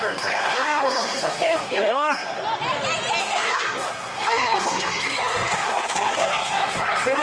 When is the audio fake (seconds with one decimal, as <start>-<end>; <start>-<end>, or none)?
0.0-2.4; 3.2-7.2